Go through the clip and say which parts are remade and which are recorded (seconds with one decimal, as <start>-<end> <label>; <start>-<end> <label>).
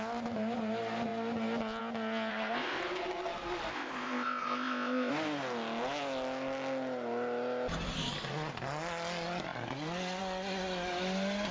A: 0.0-2.3 recorded; 2.3-2.8 remade; 2.8-3.7 recorded; 3.7-5.1 remade; 5.1-11.5 recorded